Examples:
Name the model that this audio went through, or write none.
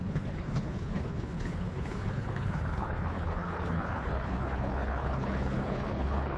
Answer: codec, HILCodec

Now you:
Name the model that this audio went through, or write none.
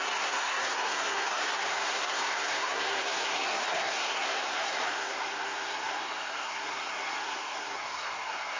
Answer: codec, SNAC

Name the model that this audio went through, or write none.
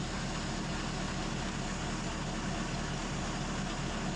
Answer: none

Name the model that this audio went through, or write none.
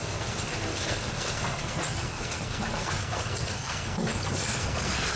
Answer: codec, SNAC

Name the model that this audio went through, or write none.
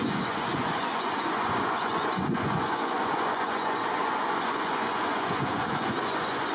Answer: vocoder, Vocos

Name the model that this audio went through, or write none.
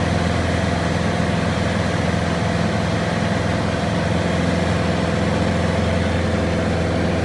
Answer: none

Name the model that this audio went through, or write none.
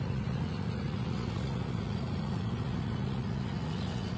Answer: vocoder, Vocos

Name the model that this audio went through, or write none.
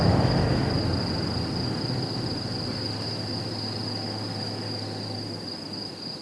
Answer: none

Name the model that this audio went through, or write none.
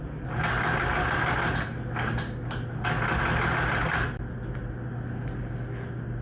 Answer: none